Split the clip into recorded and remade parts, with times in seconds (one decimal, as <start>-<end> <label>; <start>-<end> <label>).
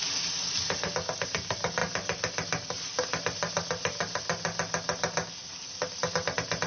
0.0-6.7 recorded